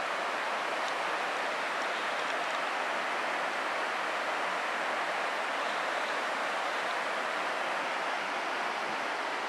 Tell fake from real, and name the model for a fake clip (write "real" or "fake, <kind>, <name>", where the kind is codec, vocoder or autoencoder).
real